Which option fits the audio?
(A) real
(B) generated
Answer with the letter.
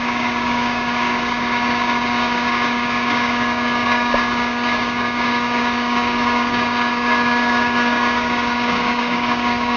B